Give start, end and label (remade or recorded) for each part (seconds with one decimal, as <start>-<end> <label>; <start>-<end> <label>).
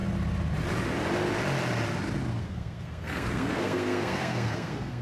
0.0-2.3 recorded; 2.3-5.0 remade